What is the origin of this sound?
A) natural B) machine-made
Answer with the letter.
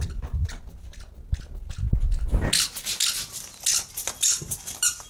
A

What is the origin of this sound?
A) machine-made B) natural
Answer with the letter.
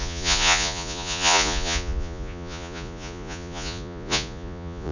A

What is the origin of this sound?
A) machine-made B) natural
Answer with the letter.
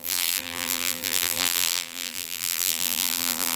A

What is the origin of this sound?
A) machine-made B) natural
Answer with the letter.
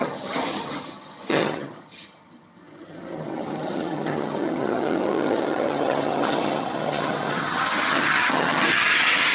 A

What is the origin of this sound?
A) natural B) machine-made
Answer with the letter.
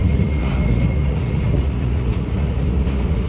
B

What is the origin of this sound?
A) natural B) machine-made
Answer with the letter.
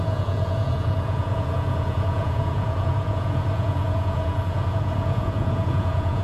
B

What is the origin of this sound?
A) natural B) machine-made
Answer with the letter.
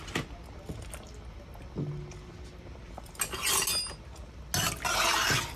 A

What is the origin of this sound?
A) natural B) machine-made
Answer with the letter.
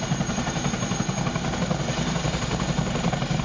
A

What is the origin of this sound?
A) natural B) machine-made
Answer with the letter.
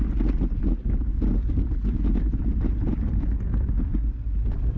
A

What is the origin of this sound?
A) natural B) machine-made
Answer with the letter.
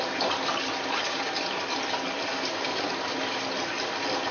A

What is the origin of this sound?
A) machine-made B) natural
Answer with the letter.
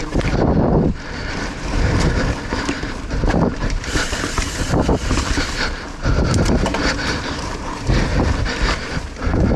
A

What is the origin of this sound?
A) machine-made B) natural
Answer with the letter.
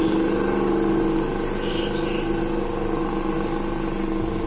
B